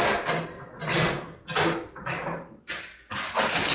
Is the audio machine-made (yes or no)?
no